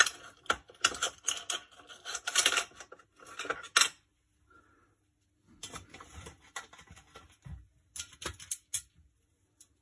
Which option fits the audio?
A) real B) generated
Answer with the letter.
A